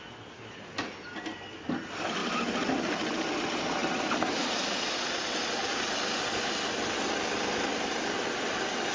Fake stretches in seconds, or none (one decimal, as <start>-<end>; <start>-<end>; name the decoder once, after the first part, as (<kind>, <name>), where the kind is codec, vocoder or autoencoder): 3.8-5.2 (vocoder, BigVGAN v2)